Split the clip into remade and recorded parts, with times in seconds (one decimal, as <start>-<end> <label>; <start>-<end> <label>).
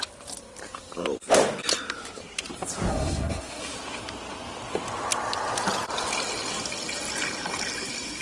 0.0-2.9 recorded; 2.9-3.6 remade; 3.6-8.2 recorded